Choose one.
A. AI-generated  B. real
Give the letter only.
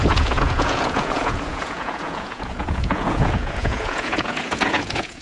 A